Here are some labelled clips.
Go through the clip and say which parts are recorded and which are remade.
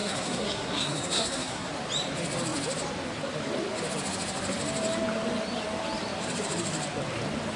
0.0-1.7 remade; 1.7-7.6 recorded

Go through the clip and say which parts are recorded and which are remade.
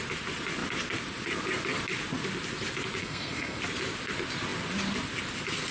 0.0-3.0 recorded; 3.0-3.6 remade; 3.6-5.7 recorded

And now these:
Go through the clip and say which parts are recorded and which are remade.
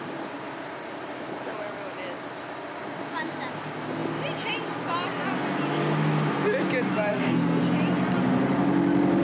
0.0-7.1 recorded; 7.1-7.6 remade; 7.6-9.2 recorded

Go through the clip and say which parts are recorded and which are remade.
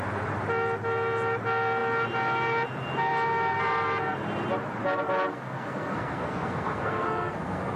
0.0-5.3 recorded; 5.3-7.8 remade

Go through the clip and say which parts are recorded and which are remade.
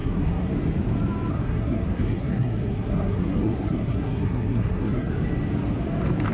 0.0-0.5 remade; 0.5-1.3 recorded; 1.3-5.1 remade; 5.1-6.3 recorded